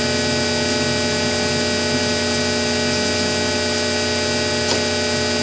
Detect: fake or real real